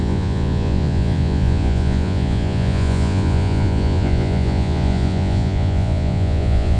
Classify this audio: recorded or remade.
remade